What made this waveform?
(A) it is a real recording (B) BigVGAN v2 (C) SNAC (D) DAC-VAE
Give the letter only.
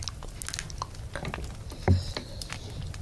A